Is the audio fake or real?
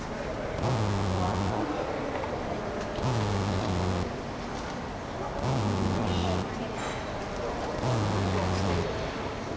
real